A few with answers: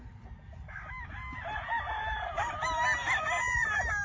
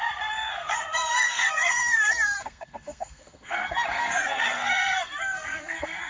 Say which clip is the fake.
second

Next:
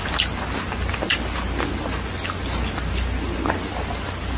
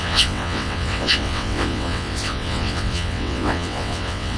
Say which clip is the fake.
second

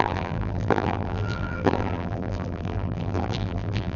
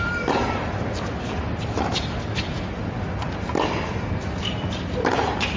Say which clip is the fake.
first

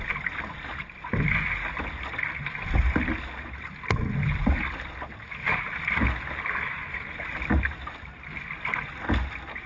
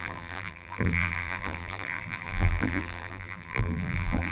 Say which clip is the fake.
second